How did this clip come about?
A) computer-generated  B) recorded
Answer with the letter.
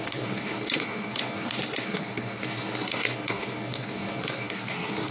A